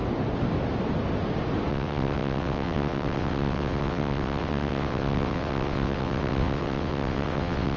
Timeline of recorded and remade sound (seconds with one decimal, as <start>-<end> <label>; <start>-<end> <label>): 0.0-1.7 recorded; 1.7-7.8 remade

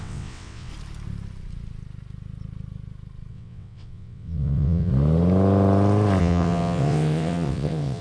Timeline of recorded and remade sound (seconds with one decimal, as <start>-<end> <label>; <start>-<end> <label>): 0.0-0.7 remade; 0.7-3.3 recorded; 3.3-4.9 remade; 4.9-6.2 recorded; 6.2-8.0 remade

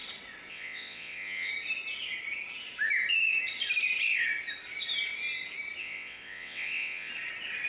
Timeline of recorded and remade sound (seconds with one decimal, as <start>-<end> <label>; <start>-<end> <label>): 0.0-0.5 recorded; 0.5-1.5 remade; 1.5-5.8 recorded; 5.8-7.1 remade; 7.1-7.7 recorded

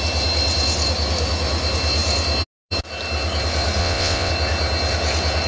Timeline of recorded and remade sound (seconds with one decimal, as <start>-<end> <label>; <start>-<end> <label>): 0.0-3.8 recorded; 3.8-4.3 remade; 4.3-5.5 recorded

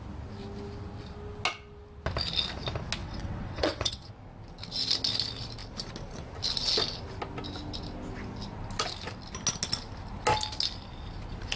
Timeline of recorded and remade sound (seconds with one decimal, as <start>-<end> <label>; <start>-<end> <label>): 0.0-3.0 recorded; 3.0-4.1 remade; 4.1-11.6 recorded